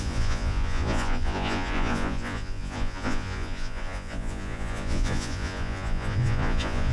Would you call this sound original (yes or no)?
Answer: no